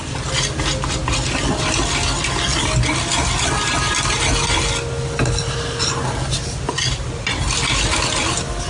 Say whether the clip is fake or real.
real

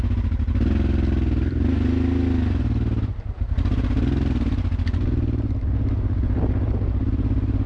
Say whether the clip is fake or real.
real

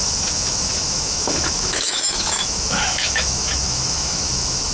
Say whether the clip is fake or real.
fake